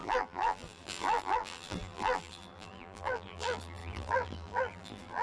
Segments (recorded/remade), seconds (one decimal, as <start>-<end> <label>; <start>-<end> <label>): 0.0-5.2 remade